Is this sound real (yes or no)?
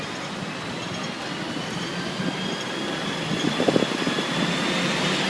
yes